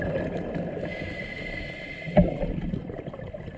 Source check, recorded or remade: recorded